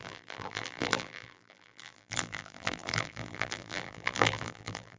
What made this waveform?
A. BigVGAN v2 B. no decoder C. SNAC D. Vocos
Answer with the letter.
A